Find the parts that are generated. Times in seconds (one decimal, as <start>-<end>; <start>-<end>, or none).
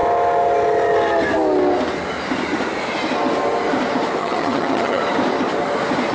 4.2-5.0